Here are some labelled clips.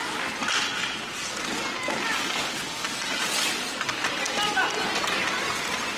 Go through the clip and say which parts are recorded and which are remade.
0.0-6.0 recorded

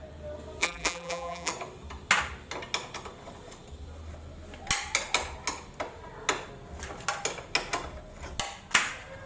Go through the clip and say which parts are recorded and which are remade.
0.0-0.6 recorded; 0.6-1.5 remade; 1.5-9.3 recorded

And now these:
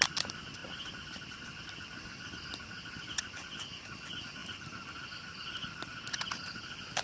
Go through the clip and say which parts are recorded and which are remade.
0.0-7.0 recorded

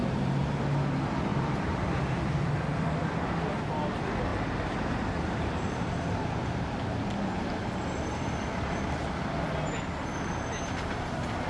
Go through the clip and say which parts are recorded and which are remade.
0.0-0.6 remade; 0.6-1.3 recorded; 1.3-2.5 remade; 2.5-4.3 recorded; 4.3-8.5 remade; 8.5-11.5 recorded

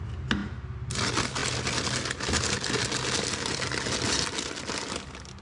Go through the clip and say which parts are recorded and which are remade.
0.0-5.4 recorded